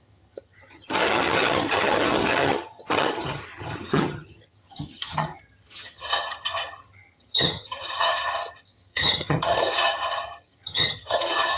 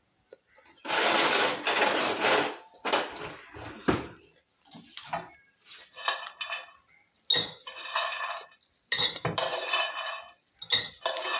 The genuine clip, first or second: second